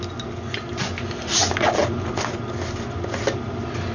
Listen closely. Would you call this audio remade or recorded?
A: recorded